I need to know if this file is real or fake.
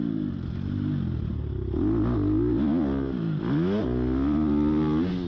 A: real